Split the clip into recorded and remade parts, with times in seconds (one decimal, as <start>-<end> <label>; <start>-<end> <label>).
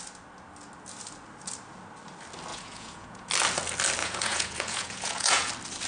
0.0-2.5 recorded; 2.5-3.3 remade; 3.3-4.0 recorded; 4.0-5.5 remade; 5.5-5.9 recorded